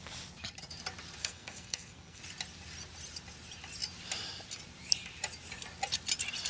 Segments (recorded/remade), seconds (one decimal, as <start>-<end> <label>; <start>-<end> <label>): 0.0-1.2 recorded; 1.2-2.2 remade; 2.2-6.5 recorded